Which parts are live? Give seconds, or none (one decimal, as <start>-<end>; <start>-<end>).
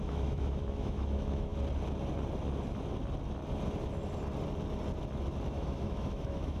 1.5-5.5